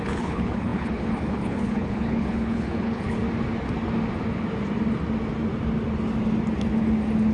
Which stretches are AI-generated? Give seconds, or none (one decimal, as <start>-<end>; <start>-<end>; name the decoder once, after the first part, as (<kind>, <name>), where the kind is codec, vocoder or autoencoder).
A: 0.0-3.2 (codec, HILCodec)